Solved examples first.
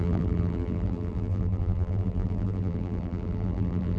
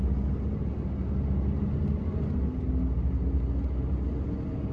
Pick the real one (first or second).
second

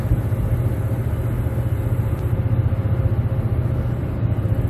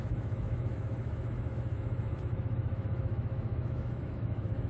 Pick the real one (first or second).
first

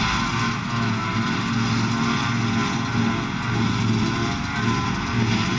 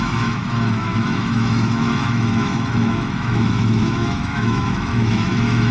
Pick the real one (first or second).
first